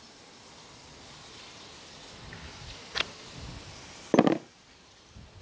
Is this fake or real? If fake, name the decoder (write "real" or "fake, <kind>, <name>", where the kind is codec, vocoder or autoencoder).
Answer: real